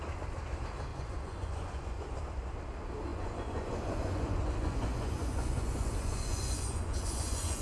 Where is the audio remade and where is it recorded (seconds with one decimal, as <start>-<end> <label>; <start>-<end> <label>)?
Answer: 0.0-0.9 recorded; 0.9-2.2 remade; 2.2-3.1 recorded; 3.1-7.6 remade